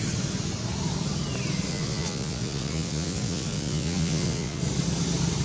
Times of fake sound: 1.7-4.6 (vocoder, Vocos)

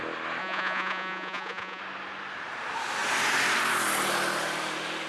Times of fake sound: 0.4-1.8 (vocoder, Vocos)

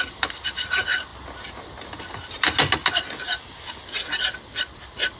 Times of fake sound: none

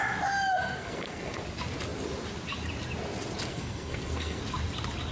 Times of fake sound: 0.5-1.4 (codec, SNAC); 3.5-4.4

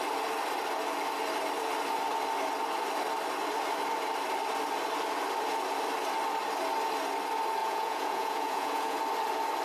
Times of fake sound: 7.6-9.0 (vocoder, Vocos)

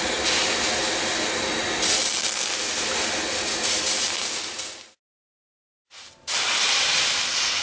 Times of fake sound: none

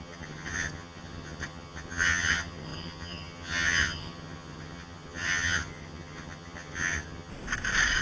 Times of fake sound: 0.0-7.3 (vocoder, HiFi-GAN)

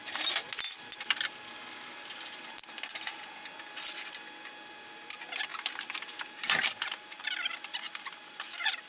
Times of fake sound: 5.5-7.3 (vocoder, BigVGAN v2)